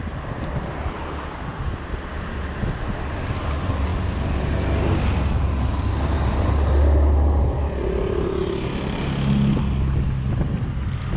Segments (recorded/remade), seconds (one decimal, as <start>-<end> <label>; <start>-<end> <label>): 0.0-11.2 recorded